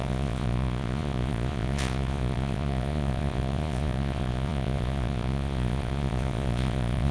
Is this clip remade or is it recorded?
remade